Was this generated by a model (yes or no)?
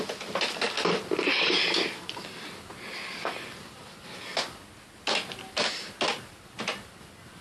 no